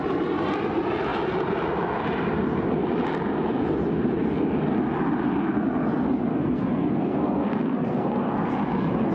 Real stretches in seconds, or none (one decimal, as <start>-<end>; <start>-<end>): 0.0-6.3; 8.5-9.1